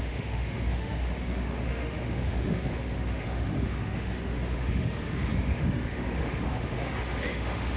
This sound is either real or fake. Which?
fake